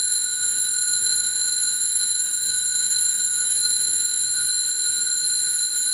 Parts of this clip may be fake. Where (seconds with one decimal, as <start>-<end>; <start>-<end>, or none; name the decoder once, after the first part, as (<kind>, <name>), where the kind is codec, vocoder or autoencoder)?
0.0-4.2 (autoencoder, DAC-VAE)